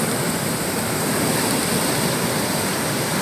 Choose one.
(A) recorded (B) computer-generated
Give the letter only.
A